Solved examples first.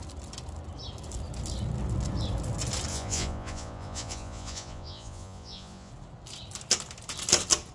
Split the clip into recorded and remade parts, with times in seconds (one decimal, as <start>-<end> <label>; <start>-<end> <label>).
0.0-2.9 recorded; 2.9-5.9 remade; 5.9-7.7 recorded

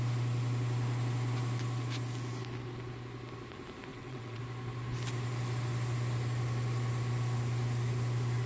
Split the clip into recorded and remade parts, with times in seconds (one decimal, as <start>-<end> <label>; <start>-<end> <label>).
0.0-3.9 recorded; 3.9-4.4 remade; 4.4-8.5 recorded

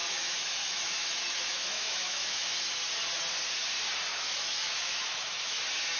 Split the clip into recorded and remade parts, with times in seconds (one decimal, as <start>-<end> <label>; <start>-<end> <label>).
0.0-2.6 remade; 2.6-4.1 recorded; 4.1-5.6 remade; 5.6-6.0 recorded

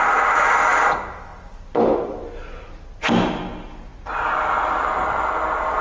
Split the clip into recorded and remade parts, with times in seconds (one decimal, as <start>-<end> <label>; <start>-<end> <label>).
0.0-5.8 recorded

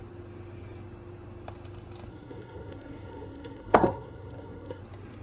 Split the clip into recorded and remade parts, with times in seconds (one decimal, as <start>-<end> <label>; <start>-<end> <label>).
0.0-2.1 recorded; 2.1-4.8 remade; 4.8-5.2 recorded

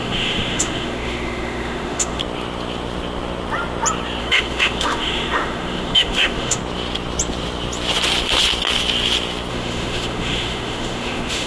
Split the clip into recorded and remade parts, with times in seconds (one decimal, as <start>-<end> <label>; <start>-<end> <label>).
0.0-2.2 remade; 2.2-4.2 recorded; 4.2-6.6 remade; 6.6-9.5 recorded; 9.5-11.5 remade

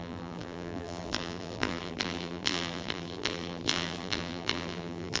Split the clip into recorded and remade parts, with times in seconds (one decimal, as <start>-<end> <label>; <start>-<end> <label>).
0.0-5.2 remade

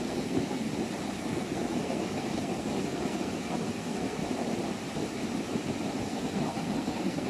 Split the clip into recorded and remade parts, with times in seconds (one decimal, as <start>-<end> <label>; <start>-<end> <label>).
0.0-0.7 remade; 0.7-1.2 recorded; 1.2-4.2 remade; 4.2-6.0 recorded; 6.0-7.3 remade